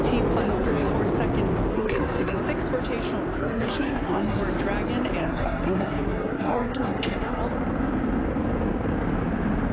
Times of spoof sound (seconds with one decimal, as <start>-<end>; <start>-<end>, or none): 0.4-0.9; 1.7-2.4; 3.4-4.4; 5.2-7.4